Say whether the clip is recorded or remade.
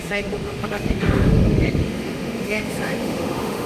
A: remade